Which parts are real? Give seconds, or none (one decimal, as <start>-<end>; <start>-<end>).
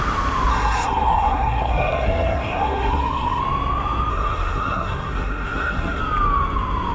0.0-0.5; 3.4-4.1; 6.0-6.9